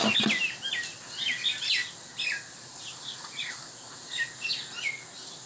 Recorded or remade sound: recorded